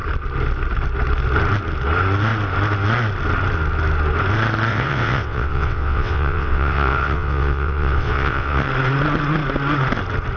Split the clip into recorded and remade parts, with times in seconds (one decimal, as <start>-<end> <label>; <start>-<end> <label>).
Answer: 0.0-4.7 recorded; 4.7-8.7 remade; 8.7-10.4 recorded